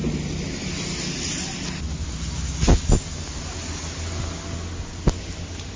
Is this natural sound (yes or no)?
yes